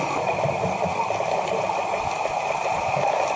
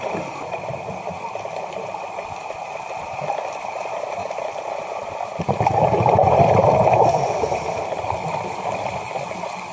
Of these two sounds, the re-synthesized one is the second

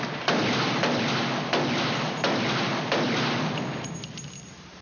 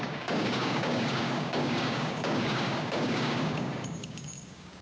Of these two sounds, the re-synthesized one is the second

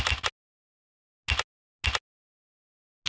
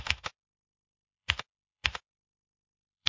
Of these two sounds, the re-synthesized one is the second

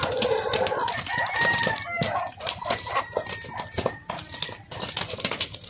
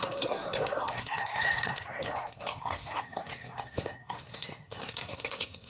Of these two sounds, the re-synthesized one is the second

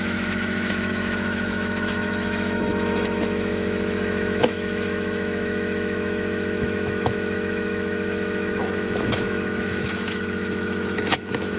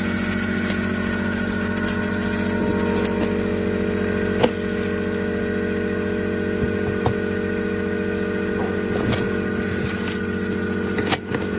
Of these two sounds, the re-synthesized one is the first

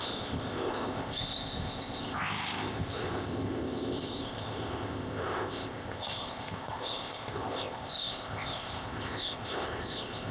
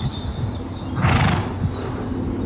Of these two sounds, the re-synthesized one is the first